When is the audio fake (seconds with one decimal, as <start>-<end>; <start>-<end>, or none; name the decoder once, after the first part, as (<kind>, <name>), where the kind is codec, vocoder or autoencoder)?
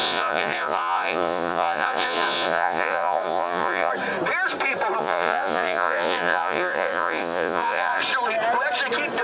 0.0-3.9 (vocoder, Vocos); 5.0-8.0